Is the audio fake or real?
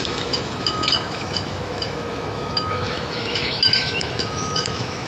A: fake